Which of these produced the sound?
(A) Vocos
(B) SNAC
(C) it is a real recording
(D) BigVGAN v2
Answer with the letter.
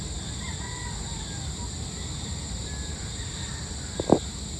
C